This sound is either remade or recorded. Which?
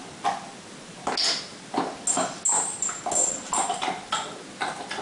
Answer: recorded